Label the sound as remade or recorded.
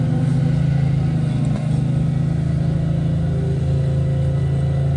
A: recorded